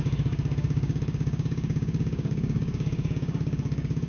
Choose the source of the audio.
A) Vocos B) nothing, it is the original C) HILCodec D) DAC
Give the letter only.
D